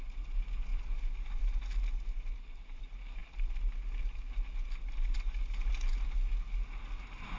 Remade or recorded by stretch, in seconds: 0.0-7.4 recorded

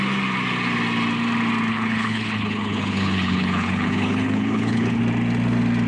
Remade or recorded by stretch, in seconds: 0.0-1.7 recorded; 1.7-5.0 remade; 5.0-5.9 recorded

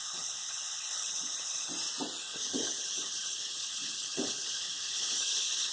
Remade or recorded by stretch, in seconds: 0.0-1.7 remade; 1.7-2.2 recorded; 2.2-5.7 remade